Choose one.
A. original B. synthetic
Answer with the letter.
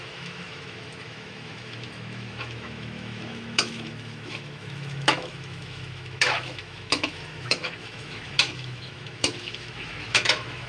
B